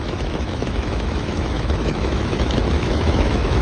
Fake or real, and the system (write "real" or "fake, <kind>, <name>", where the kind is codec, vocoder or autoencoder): fake, autoencoder, DAC-VAE